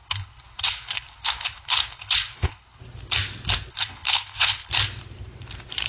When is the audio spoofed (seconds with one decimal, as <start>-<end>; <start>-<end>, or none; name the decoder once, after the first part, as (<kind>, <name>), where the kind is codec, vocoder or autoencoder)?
0.0-2.8 (codec, HILCodec); 3.7-4.7